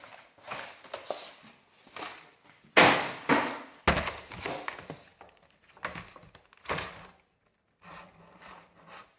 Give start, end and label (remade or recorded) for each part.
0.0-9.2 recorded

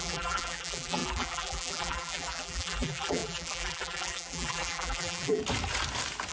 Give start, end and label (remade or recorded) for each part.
0.0-5.4 remade; 5.4-6.3 recorded

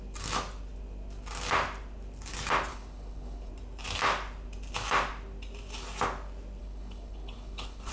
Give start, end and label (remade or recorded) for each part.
0.0-2.7 recorded; 2.7-3.5 remade; 3.5-6.6 recorded; 6.6-7.9 remade

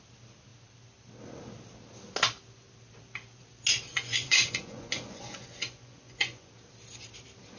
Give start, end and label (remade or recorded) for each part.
0.0-3.9 recorded; 3.9-6.5 remade; 6.5-7.6 recorded

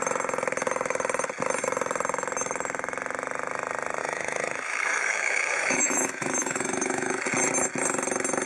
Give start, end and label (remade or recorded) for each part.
0.0-4.0 recorded; 4.0-7.2 remade; 7.2-8.5 recorded

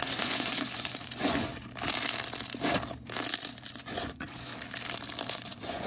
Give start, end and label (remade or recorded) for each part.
0.0-1.5 remade; 1.5-3.7 recorded; 3.7-4.5 remade; 4.5-5.3 recorded; 5.3-5.9 remade

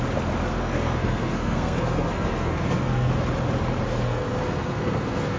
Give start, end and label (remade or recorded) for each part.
0.0-0.4 recorded; 0.4-3.1 remade; 3.1-3.9 recorded; 3.9-5.4 remade